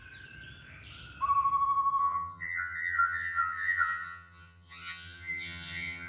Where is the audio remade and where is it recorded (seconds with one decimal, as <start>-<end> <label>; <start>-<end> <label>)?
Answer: 0.0-2.0 recorded; 2.0-6.1 remade